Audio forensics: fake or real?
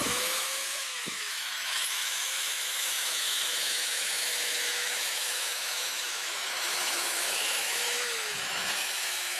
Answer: fake